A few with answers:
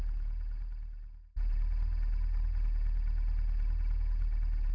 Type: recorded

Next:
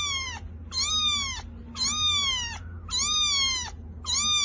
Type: recorded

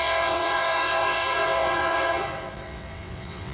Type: remade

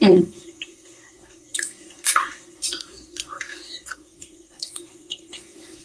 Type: remade